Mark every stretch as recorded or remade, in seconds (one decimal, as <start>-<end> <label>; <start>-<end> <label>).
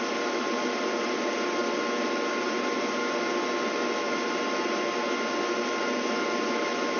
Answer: 0.0-7.0 recorded